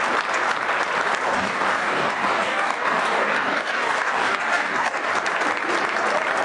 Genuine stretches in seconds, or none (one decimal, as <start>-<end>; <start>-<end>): 0.0-1.3; 5.1-6.4